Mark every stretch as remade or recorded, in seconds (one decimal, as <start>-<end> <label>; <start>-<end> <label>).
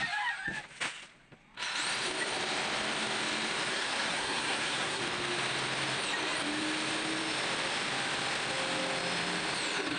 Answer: 0.0-3.7 recorded; 3.7-5.0 remade; 5.0-10.0 recorded